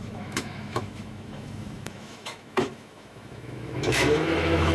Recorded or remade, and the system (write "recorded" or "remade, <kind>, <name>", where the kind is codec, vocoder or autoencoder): remade, autoencoder, DAC-VAE